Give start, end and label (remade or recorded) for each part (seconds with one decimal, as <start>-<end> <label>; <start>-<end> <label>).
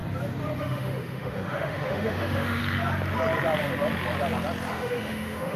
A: 0.0-0.6 recorded; 0.6-2.6 remade; 2.6-4.7 recorded; 4.7-5.6 remade